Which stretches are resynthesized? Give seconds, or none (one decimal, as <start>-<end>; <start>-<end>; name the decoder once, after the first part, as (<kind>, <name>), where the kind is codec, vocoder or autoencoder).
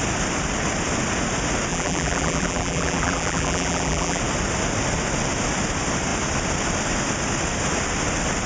1.7-4.2 (vocoder, BigVGAN v2)